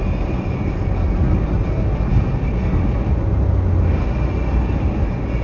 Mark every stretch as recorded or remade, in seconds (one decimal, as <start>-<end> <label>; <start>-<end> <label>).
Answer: 0.0-5.4 recorded